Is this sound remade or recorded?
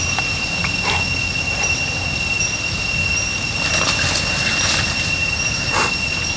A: recorded